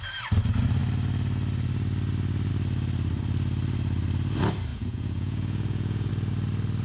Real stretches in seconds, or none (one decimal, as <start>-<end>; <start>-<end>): 0.0-4.7; 6.1-6.8